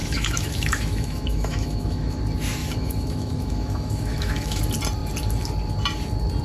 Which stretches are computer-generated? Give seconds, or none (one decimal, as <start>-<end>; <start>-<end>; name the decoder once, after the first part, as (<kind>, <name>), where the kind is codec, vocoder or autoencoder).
0.0-2.2 (autoencoder, DAC-VAE); 2.6-4.6